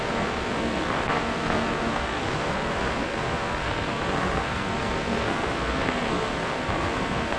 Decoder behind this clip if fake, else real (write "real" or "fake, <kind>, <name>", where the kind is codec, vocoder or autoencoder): fake, codec, SNAC